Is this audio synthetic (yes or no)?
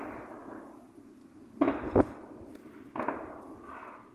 no